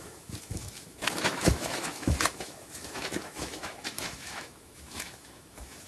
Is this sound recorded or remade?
remade